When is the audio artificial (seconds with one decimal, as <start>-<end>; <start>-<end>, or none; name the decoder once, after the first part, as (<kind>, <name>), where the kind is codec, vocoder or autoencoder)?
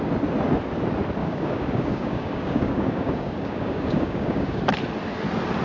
1.2-4.6 (codec, DAC)